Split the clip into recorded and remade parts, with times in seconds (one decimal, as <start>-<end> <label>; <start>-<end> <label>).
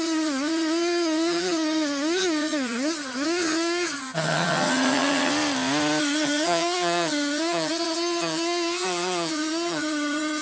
0.0-5.3 remade; 5.3-6.0 recorded; 6.0-10.4 remade